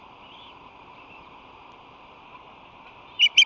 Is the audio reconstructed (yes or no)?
yes